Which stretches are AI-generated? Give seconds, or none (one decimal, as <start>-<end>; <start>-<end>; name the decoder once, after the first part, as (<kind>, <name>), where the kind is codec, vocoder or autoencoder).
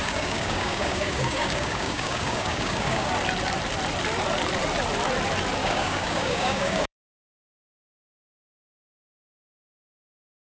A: 0.0-3.1 (codec, DAC); 5.6-7.8